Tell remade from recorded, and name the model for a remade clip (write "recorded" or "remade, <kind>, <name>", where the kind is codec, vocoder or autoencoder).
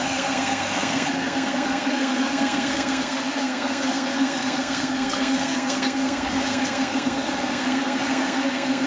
remade, codec, SNAC